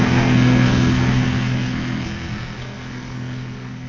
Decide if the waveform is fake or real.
fake